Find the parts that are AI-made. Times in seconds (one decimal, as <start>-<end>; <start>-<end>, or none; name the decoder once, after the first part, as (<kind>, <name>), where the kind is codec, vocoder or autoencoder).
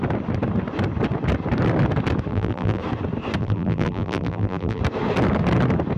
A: 2.3-2.8 (vocoder, BigVGAN v2); 3.4-4.8